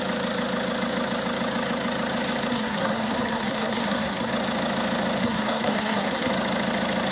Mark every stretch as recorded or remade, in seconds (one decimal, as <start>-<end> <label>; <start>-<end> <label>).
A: 0.0-2.5 recorded; 2.5-4.3 remade; 4.3-5.2 recorded; 5.2-6.3 remade; 6.3-7.1 recorded